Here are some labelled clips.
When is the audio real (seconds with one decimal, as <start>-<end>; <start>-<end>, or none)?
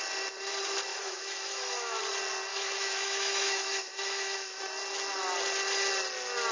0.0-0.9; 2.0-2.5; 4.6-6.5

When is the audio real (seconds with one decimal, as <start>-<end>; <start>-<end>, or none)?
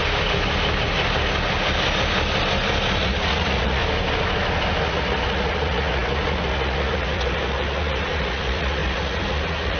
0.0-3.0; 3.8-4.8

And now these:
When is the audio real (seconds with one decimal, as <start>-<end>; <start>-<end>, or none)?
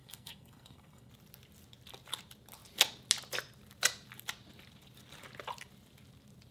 1.1-6.5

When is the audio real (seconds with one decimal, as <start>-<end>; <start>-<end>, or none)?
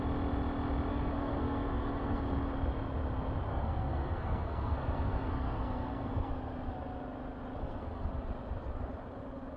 0.0-0.9; 2.2-3.5; 6.3-7.6; 8.1-9.6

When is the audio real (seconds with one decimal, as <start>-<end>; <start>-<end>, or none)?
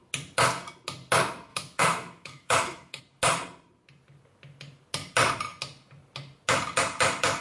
0.0-1.5; 3.0-7.4